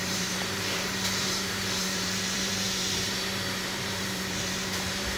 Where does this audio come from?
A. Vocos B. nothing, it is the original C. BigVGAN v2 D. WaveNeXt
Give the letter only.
C